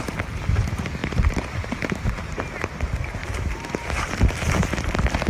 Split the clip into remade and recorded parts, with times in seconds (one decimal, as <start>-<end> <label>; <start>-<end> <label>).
0.0-1.0 recorded; 1.0-2.4 remade; 2.4-3.2 recorded; 3.2-4.1 remade; 4.1-5.3 recorded